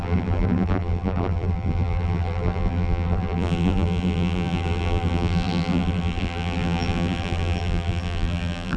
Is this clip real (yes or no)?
no